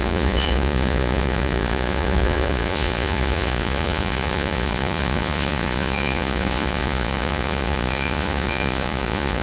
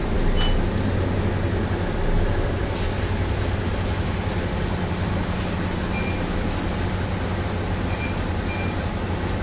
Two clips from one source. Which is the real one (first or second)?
second